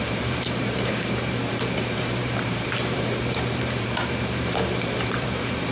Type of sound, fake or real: fake